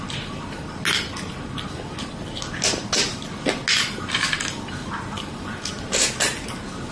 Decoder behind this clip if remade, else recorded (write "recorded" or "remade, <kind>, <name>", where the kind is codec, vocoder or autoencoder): recorded